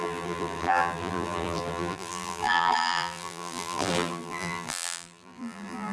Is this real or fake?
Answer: fake